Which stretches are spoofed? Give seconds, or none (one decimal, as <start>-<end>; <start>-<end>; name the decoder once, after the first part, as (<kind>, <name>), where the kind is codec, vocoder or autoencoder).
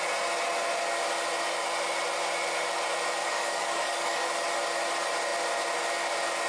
3.2-4.3 (codec, DAC)